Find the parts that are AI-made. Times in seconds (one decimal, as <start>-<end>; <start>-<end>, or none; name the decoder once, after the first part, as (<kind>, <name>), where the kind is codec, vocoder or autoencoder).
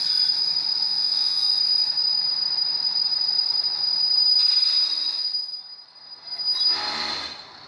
0.8-1.6 (vocoder, Vocos)